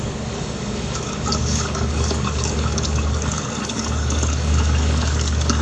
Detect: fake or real fake